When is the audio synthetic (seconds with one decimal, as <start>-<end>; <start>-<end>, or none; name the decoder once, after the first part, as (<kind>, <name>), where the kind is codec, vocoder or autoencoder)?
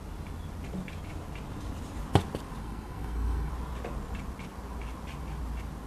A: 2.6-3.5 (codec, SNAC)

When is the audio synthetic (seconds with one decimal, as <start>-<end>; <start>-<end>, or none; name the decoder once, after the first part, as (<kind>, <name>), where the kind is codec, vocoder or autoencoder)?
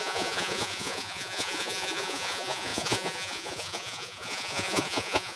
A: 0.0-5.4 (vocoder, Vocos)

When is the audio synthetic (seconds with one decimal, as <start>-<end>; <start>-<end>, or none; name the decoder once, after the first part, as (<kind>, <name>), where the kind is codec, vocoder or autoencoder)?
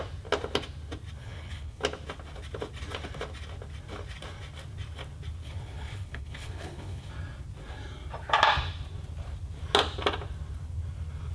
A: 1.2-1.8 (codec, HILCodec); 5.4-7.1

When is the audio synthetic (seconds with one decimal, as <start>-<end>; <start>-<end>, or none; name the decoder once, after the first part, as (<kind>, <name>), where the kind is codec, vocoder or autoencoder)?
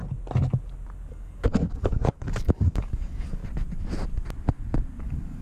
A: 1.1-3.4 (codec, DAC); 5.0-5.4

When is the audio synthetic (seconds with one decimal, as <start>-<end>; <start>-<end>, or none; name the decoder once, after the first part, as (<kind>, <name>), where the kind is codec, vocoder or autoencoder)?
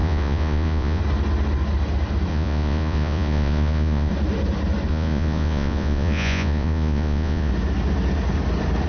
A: 0.0-1.0 (vocoder, Vocos); 2.3-4.1; 4.9-7.5